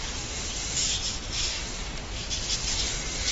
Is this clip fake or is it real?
fake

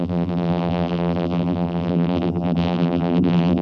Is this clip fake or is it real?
fake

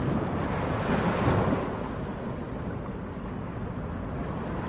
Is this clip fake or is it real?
real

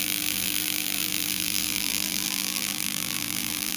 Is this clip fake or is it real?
fake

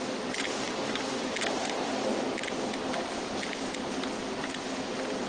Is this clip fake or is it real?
real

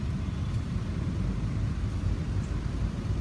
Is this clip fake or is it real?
fake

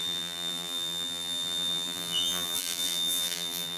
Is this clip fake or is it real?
fake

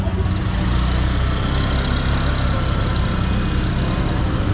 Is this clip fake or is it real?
real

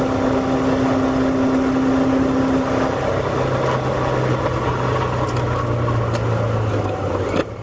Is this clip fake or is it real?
real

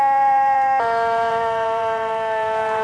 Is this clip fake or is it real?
fake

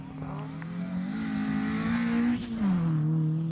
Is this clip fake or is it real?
real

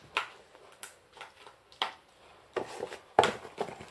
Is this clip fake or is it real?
real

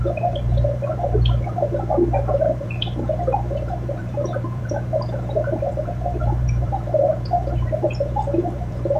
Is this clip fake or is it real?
fake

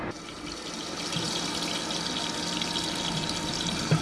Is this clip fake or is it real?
real